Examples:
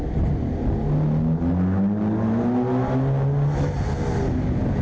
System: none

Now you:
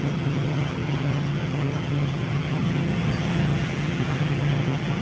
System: vocoder, HiFi-GAN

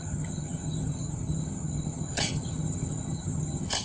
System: vocoder, HiFi-GAN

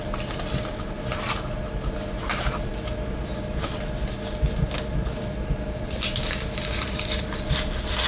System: none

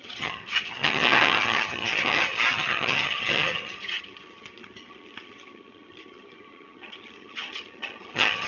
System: vocoder, HiFi-GAN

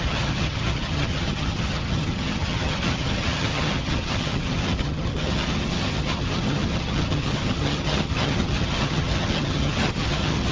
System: vocoder, HiFi-GAN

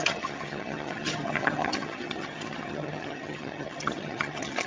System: vocoder, HiFi-GAN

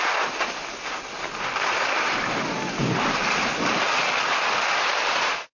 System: none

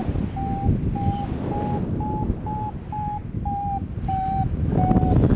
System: none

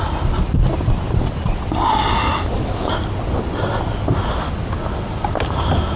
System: none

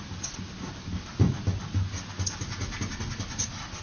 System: none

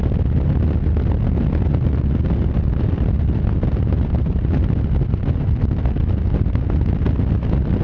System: none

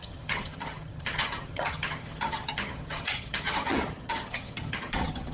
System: vocoder, HiFi-GAN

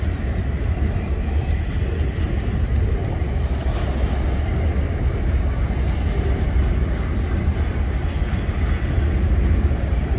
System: none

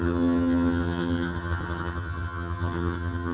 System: vocoder, HiFi-GAN